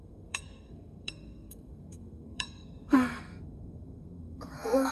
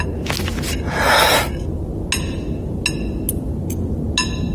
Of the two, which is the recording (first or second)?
second